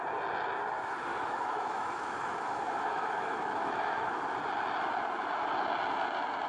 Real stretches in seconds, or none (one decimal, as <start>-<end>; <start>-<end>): 0.0-1.1; 4.2-6.5